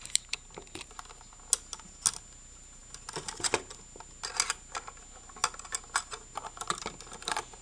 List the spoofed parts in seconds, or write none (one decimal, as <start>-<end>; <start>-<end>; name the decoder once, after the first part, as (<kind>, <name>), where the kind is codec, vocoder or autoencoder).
none